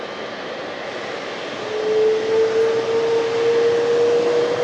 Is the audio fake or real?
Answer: real